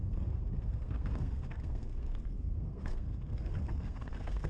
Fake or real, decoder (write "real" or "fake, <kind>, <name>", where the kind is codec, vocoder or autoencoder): fake, codec, SNAC